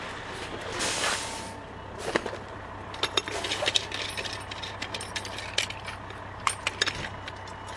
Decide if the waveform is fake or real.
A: real